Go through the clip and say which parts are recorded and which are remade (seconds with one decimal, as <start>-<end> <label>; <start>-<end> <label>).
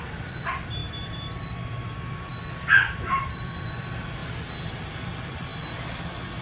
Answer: 0.0-4.2 remade; 4.2-4.7 recorded; 4.7-5.5 remade; 5.5-6.4 recorded